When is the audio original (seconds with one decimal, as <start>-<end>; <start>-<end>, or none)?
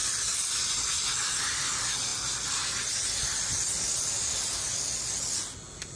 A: 0.0-6.0